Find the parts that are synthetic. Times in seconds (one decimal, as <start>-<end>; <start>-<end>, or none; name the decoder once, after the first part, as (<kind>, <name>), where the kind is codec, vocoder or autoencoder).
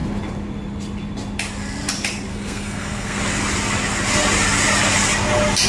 2.3-3.2 (codec, SNAC)